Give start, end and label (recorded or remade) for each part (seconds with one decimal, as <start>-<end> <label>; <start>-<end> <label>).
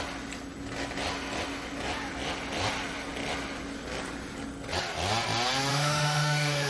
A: 0.0-5.7 recorded; 5.7-6.7 remade